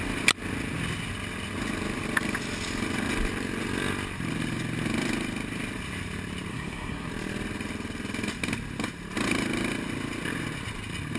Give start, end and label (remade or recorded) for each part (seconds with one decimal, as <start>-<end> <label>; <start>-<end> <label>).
0.0-6.5 recorded; 6.5-7.1 remade; 7.1-11.2 recorded